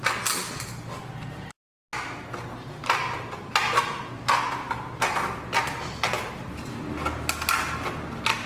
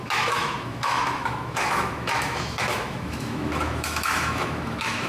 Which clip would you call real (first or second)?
first